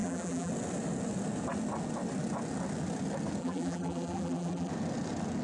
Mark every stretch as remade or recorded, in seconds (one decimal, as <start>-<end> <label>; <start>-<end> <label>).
0.0-0.5 remade; 0.5-3.4 recorded; 3.4-4.7 remade; 4.7-5.4 recorded